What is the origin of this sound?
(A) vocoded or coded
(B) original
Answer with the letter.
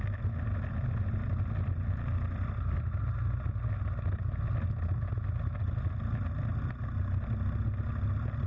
B